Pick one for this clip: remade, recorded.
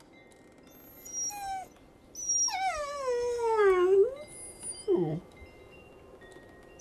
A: recorded